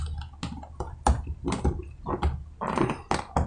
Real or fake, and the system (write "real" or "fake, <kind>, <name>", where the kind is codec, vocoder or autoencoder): real